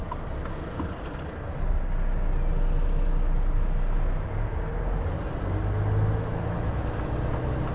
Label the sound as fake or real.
real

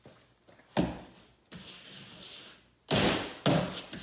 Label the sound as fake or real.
real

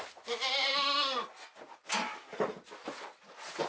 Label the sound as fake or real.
real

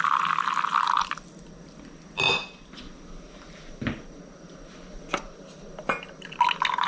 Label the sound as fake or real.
real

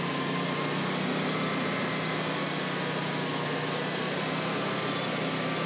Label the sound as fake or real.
real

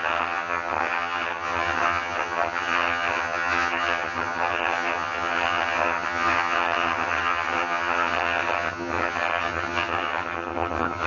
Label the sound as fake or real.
fake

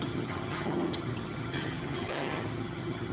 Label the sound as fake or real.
fake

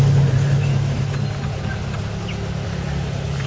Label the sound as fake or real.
real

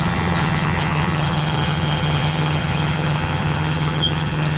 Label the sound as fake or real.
fake